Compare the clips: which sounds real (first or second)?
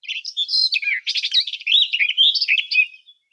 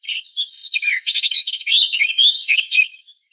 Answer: first